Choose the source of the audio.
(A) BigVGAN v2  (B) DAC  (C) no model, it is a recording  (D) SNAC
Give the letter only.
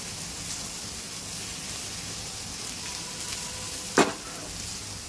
C